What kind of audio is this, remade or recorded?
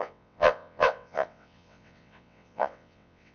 remade